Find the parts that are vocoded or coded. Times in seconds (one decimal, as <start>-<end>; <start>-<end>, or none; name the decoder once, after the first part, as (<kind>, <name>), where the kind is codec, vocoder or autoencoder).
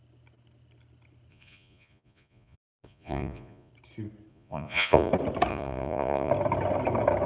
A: 1.3-3.7 (vocoder, Vocos); 4.3-5.1; 5.5-6.3